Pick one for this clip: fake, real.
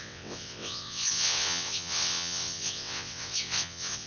fake